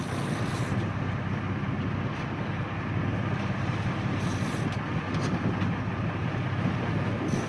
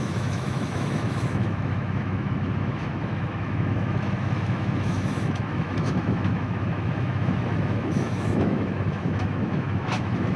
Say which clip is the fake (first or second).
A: second